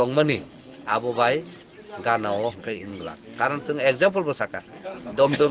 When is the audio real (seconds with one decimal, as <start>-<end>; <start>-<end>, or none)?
0.9-2.5; 2.9-4.4